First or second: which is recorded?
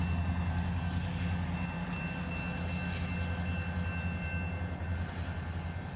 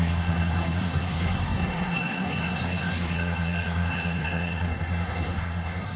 first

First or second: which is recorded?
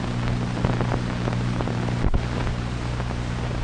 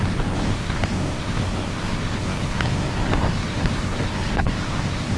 first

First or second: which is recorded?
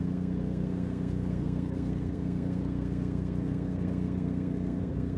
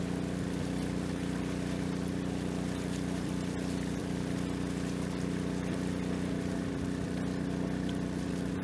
second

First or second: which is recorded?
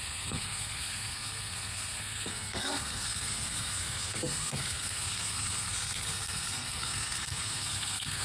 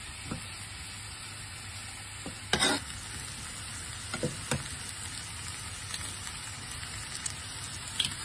second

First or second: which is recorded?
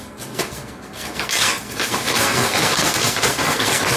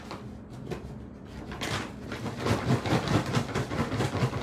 second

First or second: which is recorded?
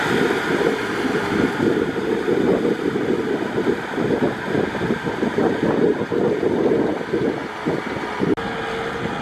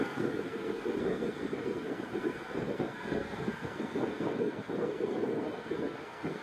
first